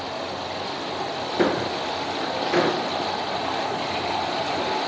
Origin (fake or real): real